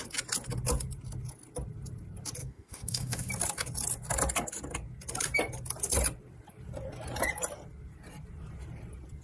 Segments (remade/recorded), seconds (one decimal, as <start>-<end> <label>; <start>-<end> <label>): 0.0-2.4 recorded; 2.4-3.3 remade; 3.3-9.2 recorded